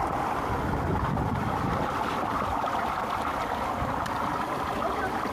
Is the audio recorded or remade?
recorded